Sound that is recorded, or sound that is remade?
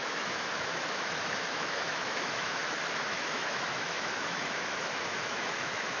remade